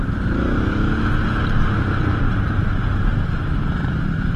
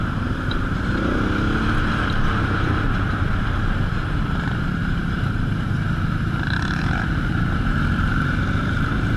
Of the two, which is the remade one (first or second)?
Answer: second